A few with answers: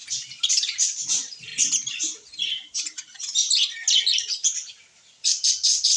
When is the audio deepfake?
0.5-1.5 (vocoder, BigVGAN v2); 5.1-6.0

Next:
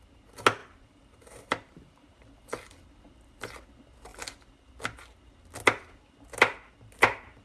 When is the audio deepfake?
0.6-2.2 (vocoder, BigVGAN v2)

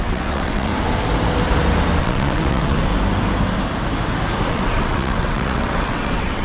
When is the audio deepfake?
0.0-0.7 (vocoder, WaveNeXt); 2.0-2.9; 4.5-6.4

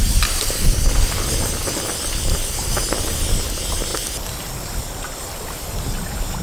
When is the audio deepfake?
none